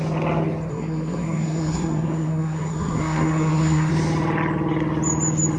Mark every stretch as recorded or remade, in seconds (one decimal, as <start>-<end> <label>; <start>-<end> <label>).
0.0-0.7 recorded; 0.7-3.9 remade; 3.9-5.6 recorded